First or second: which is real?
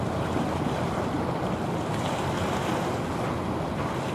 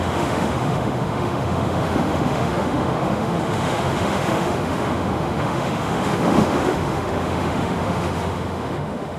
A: first